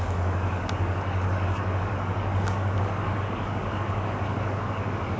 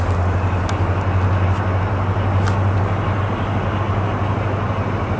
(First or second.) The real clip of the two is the second